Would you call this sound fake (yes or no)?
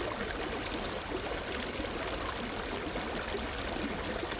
no